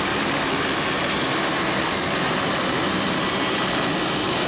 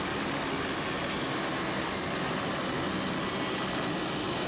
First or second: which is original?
second